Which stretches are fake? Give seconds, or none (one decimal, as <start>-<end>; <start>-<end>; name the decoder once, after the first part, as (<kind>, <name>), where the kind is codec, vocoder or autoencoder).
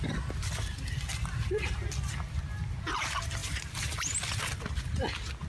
none